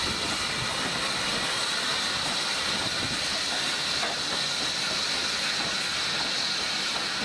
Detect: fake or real real